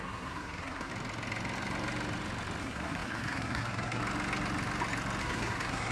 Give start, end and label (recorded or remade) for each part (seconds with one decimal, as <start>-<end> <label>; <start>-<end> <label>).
0.0-0.9 remade; 0.9-2.6 recorded; 2.6-4.0 remade; 4.0-5.2 recorded; 5.2-5.9 remade